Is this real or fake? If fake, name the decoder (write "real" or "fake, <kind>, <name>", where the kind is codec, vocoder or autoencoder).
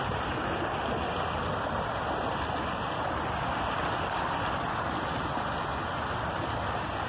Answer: real